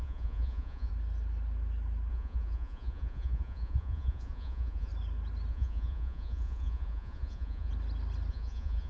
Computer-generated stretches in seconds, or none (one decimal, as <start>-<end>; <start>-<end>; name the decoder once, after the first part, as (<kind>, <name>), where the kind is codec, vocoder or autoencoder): 0.0-0.9 (vocoder, Vocos); 2.1-4.9; 5.5-7.7; 8.3-8.9